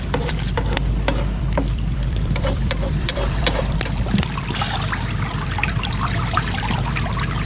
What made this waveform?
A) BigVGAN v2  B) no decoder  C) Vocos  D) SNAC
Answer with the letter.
A